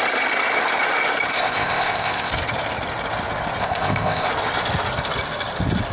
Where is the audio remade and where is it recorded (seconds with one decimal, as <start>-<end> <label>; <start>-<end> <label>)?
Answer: 0.0-1.3 recorded; 1.3-2.3 remade; 2.3-3.6 recorded; 3.6-4.3 remade; 4.3-5.9 recorded